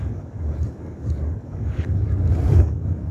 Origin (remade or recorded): remade